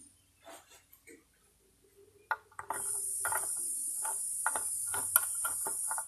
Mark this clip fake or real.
real